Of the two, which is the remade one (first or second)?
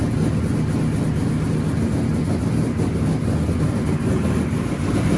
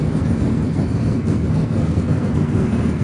second